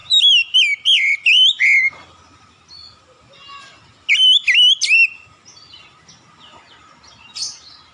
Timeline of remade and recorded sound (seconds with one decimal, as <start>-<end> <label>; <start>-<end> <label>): 0.0-7.9 recorded